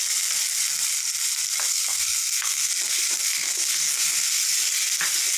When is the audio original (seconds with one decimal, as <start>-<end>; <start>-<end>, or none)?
0.0-1.7; 2.7-3.3; 4.4-5.4